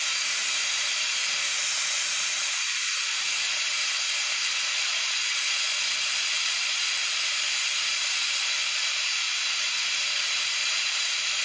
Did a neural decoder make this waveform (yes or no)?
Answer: yes